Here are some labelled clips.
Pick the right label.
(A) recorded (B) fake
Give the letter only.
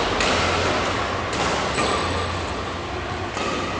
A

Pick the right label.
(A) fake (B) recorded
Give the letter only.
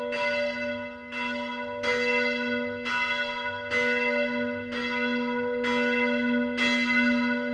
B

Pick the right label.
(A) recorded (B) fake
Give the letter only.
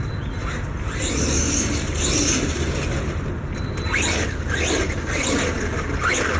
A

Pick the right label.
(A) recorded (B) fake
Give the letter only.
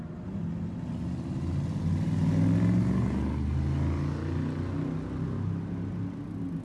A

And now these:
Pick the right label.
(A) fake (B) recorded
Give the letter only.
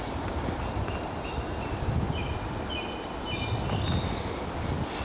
B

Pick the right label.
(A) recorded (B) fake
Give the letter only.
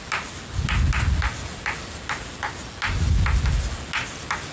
A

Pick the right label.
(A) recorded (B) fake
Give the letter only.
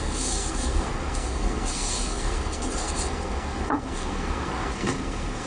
B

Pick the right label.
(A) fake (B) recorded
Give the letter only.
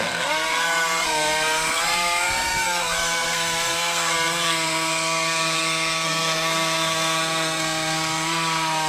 A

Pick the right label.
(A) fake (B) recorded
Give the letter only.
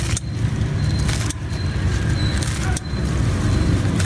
B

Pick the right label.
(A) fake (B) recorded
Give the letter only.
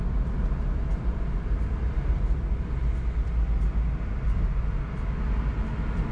B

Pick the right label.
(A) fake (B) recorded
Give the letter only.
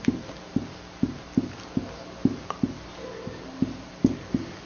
B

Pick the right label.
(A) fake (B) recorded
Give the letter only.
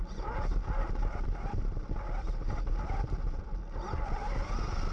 B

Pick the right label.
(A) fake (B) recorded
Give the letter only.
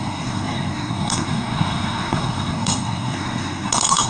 A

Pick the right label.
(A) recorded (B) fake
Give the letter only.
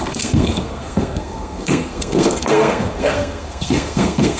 B